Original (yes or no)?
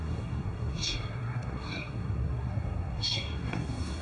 no